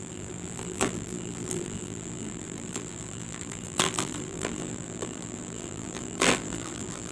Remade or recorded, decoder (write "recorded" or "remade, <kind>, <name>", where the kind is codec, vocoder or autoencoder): remade, vocoder, BigVGAN v2